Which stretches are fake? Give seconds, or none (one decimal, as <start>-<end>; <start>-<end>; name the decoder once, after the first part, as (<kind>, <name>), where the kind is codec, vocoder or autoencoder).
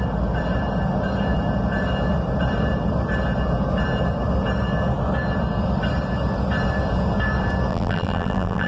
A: 7.7-8.7 (vocoder, BigVGAN v2)